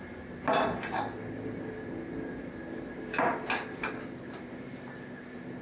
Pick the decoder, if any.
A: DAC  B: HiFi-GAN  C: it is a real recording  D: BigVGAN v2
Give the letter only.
C